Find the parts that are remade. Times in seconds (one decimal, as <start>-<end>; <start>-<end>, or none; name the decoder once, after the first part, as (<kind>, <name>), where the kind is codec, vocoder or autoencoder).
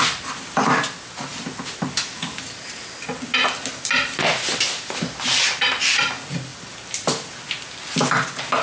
none